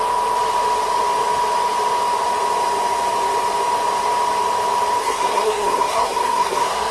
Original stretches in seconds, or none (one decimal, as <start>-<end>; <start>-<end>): 0.0-5.0